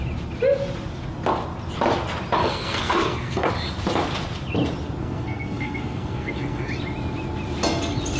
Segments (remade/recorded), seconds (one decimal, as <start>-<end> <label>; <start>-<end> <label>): 0.0-2.4 recorded; 2.4-3.5 remade; 3.5-5.0 recorded; 5.0-6.7 remade; 6.7-8.2 recorded